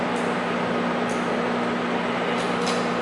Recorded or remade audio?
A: recorded